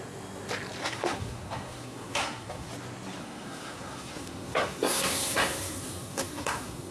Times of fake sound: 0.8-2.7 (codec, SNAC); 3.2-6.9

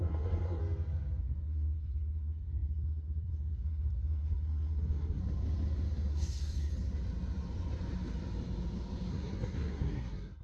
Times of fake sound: 0.0-0.6 (codec, SNAC); 1.2-5.2; 6.1-6.7; 9.1-10.4

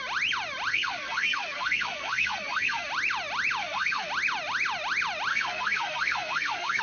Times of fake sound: 0.7-2.9 (codec, SNAC); 3.6-4.1; 5.3-6.8

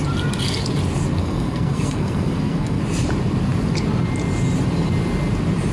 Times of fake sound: 1.2-2.8 (codec, SNAC)

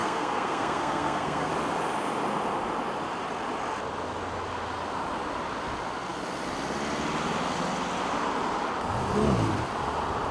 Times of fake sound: 0.0-1.5 (codec, SNAC)

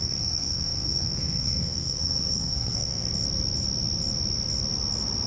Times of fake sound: 0.0-3.1 (codec, SNAC)

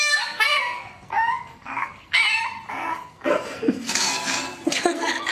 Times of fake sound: 0.0-2.2 (codec, SNAC); 2.7-5.3

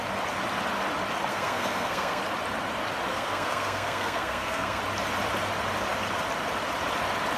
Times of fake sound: 1.3-2.2 (codec, SNAC); 3.1-4.8